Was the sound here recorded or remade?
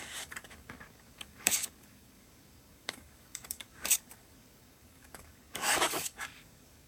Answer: remade